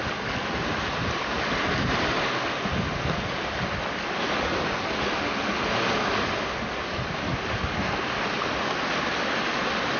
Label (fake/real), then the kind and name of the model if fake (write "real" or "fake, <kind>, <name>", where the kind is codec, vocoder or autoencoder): real